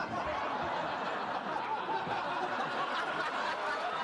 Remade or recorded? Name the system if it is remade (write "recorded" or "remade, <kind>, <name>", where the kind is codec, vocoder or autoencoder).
recorded